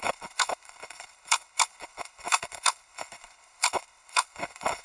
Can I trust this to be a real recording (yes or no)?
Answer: no